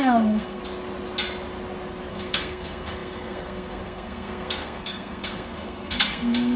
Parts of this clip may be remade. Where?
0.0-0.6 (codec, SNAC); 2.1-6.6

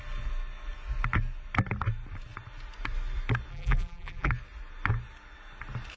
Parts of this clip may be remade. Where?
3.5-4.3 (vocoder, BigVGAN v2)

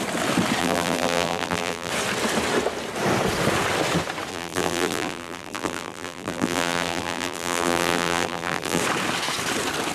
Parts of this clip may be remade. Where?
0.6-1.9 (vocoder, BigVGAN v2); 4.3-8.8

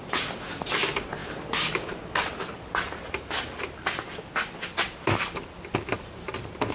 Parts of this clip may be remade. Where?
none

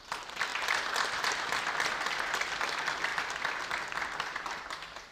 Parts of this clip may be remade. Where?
none

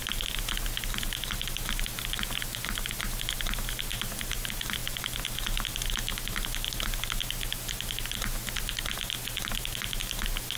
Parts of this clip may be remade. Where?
none